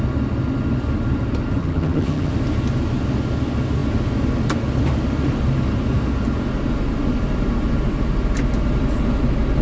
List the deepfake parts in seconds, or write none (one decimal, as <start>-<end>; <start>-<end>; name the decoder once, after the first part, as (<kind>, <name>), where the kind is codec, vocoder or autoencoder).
1.6-2.3 (vocoder, HiFi-GAN)